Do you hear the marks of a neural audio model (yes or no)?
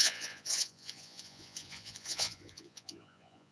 yes